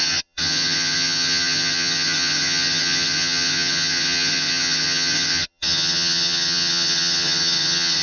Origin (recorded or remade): remade